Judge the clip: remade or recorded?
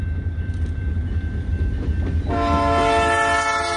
recorded